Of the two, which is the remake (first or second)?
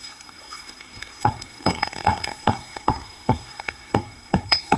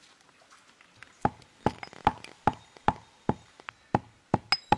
first